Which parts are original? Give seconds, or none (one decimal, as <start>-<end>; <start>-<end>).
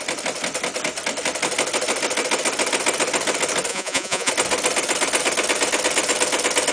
0.0-3.7; 4.3-6.7